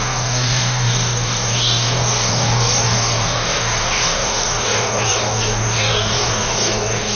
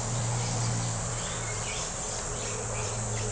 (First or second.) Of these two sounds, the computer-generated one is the first